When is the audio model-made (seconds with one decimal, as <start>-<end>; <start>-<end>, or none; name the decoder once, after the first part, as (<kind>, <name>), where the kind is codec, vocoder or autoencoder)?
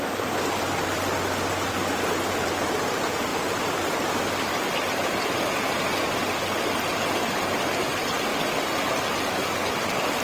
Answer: none